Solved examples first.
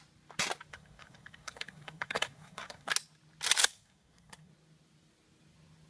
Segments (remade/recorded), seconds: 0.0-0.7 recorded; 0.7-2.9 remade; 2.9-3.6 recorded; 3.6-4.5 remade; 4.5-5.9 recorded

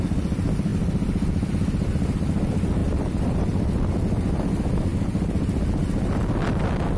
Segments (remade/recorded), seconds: 0.0-7.0 recorded

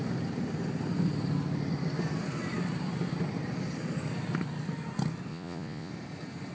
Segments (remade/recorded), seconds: 0.0-5.3 recorded; 5.3-5.9 remade; 5.9-6.5 recorded

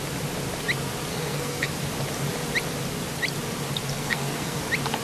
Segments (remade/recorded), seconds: 0.0-1.1 recorded; 1.1-1.7 remade; 1.7-3.9 recorded; 3.9-4.6 remade; 4.6-5.0 recorded

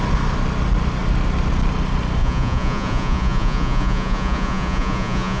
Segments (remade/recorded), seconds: 0.0-2.2 recorded; 2.2-5.4 remade